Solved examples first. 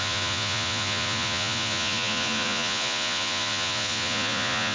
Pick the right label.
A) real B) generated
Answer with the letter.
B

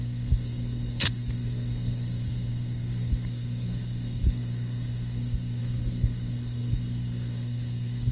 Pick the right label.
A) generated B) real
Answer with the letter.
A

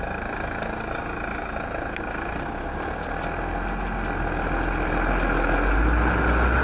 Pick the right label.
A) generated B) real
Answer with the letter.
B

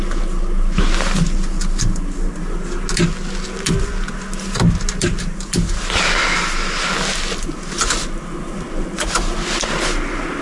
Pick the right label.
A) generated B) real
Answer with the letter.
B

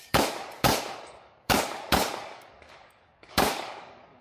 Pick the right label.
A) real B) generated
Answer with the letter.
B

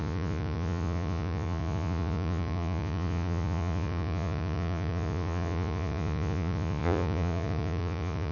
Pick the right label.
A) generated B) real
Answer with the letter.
A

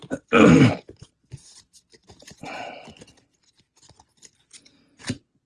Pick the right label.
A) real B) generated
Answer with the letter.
A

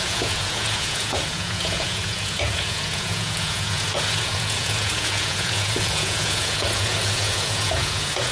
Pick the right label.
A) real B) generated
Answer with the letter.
B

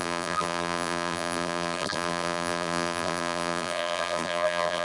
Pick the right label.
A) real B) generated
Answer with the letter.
B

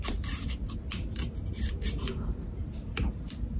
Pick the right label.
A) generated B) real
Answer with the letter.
B